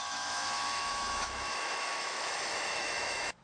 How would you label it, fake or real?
fake